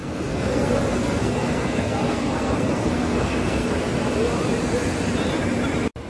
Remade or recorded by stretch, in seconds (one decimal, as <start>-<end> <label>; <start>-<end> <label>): 0.0-3.7 remade; 3.7-6.1 recorded